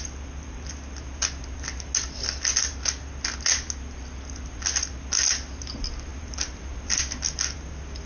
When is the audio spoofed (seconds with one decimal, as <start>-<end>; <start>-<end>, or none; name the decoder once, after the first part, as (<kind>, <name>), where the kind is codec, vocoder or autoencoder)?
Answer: none